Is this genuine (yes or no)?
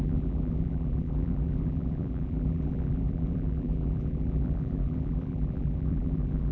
no